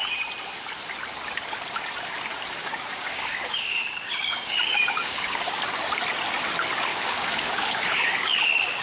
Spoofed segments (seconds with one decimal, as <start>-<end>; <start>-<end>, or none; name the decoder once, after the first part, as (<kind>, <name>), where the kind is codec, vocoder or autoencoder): 2.6-5.5 (codec, DAC); 6.9-8.8

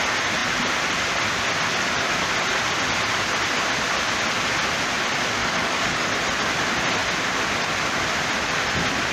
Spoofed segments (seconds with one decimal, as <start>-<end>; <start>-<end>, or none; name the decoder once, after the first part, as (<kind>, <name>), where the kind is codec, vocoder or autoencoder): 5.4-6.1 (codec, DAC)

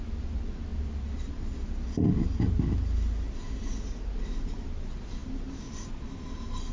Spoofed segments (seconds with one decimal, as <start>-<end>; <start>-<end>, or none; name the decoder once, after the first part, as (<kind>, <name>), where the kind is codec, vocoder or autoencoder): none

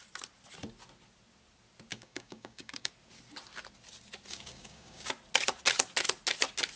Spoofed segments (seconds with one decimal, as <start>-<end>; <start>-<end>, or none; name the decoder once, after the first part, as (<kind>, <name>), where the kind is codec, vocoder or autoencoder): 1.9-2.9 (codec, DAC); 4.3-5.1

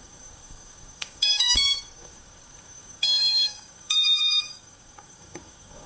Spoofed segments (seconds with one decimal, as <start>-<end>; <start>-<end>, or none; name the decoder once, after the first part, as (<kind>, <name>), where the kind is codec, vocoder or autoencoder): 0.0-5.9 (codec, DAC)

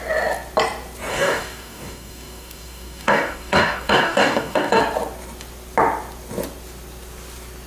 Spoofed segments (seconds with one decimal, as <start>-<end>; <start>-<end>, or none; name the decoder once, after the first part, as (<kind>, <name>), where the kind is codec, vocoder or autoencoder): 1.1-4.8 (codec, DAC)

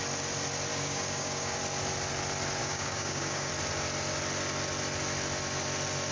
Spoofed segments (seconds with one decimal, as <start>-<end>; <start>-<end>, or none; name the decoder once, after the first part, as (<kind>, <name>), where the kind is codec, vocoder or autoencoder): 0.7-1.6 (codec, DAC); 2.6-3.5